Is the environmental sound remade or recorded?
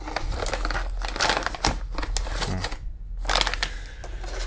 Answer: recorded